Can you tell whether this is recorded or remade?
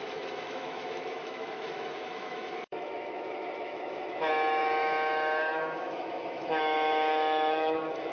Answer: remade